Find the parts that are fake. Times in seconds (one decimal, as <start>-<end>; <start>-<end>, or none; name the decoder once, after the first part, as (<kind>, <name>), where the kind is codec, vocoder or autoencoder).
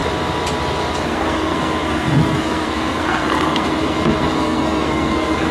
0.9-5.5 (codec, SNAC)